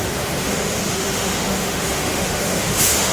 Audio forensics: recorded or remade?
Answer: remade